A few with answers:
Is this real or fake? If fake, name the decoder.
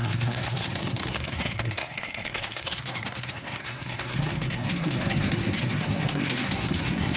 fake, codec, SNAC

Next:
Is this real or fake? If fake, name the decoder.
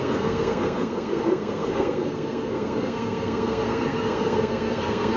fake, codec, SNAC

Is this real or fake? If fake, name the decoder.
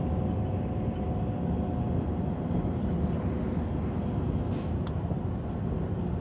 real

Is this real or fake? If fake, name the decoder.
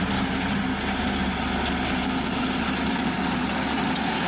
real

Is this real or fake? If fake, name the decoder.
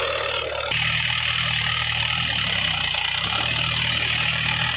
real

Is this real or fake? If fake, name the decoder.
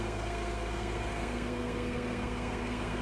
fake, codec, SNAC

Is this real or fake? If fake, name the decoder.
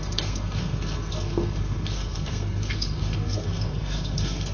fake, codec, SNAC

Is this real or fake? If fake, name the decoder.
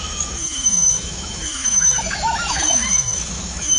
fake, autoencoder, DAC-VAE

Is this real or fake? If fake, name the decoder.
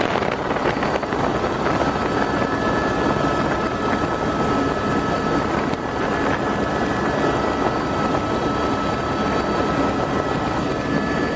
real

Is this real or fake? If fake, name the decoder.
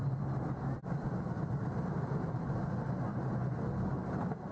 real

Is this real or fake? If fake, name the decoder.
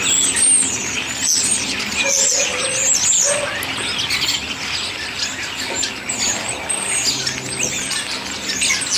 real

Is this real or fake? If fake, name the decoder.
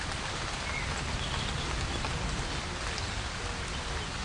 real